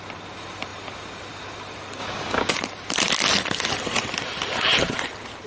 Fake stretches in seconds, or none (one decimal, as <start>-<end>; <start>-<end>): 2.0-2.5